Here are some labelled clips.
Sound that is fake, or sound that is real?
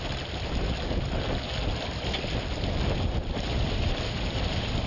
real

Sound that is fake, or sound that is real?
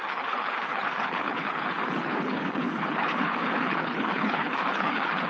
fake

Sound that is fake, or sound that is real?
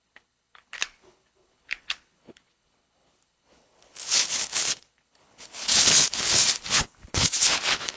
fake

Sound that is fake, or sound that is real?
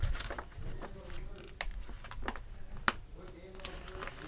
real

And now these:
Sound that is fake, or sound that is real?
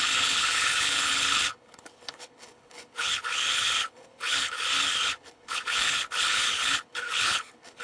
fake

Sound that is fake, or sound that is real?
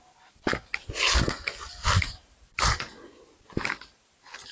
real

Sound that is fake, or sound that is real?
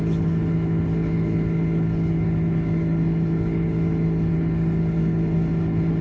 fake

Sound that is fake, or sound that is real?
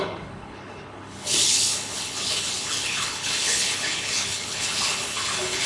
fake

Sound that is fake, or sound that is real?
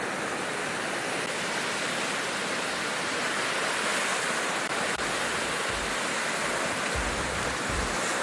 real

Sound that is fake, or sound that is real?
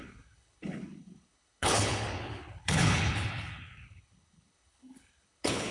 fake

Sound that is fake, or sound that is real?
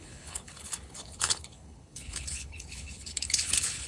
fake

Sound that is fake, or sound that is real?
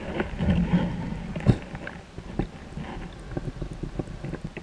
real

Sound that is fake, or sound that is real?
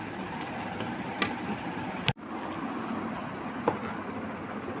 real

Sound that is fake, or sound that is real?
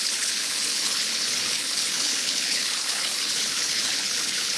fake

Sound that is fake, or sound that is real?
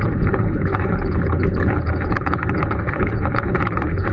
fake